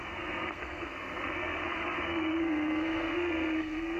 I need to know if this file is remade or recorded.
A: remade